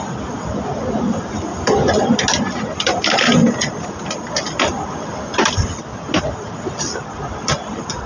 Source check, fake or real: real